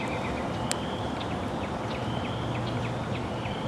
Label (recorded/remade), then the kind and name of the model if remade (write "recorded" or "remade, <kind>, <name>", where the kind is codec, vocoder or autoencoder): recorded